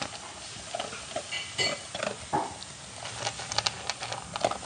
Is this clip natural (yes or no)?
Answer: yes